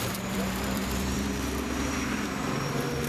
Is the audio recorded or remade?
remade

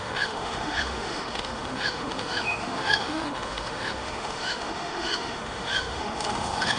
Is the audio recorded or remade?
remade